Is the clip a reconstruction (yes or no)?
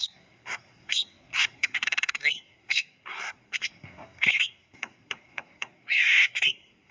yes